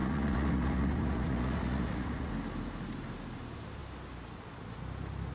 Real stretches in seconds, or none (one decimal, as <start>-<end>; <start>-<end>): 2.3-5.3